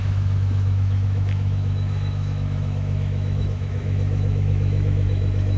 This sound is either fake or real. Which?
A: fake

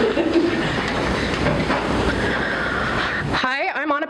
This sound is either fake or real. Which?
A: fake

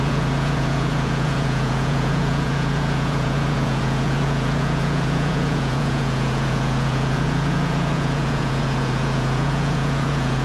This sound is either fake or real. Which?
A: fake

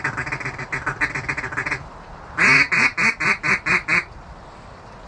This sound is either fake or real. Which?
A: fake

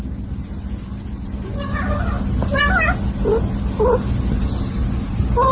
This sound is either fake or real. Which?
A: real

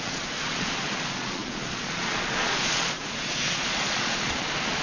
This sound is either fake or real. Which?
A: fake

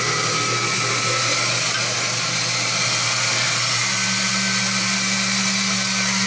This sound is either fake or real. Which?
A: real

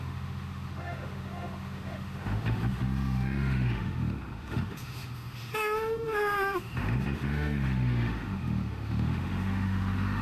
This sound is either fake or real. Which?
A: fake